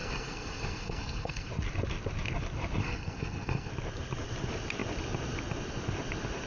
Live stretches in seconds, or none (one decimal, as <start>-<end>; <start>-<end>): 1.5-2.8; 3.7-6.5